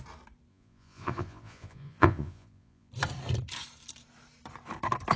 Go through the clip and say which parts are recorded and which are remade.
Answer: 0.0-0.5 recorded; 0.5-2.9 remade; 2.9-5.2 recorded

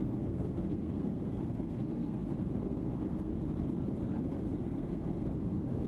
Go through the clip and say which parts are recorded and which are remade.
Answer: 0.0-3.3 remade; 3.3-4.2 recorded; 4.2-5.9 remade

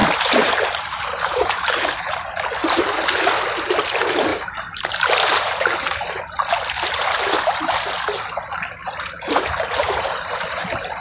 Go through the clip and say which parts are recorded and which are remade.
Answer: 0.0-2.4 remade; 2.4-4.3 recorded; 4.3-6.2 remade; 6.2-8.8 recorded; 8.8-11.0 remade

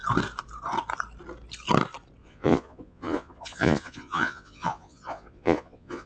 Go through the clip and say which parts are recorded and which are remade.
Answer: 0.0-2.2 recorded; 2.2-6.1 remade

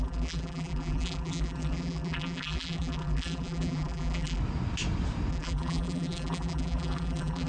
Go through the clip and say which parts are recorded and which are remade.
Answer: 0.0-4.4 remade; 4.4-5.3 recorded; 5.3-7.5 remade

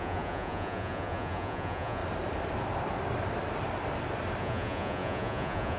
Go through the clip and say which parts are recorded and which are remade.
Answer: 0.0-2.0 remade; 2.0-4.4 recorded; 4.4-5.8 remade